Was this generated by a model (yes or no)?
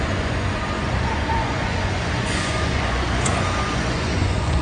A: yes